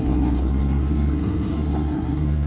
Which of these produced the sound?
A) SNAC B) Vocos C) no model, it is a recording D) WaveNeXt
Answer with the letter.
A